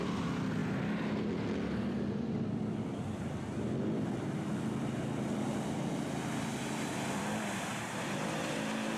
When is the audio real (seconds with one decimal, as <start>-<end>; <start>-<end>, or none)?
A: 0.0-7.7